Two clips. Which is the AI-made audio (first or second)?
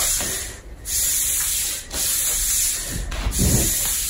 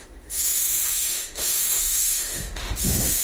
second